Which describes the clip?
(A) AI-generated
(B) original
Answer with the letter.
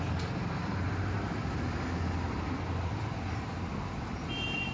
B